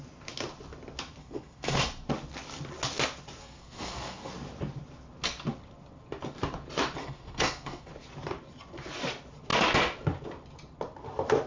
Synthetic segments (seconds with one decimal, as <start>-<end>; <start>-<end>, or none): 1.2-1.8; 3.4-4.3; 7.0-7.9